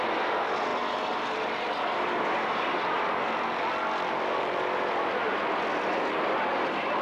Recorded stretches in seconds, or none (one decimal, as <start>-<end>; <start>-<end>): 0.0-7.0